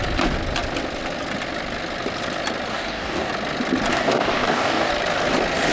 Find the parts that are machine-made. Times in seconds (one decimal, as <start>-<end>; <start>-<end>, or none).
2.7-3.3; 3.9-4.9